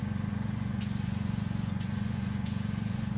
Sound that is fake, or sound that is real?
fake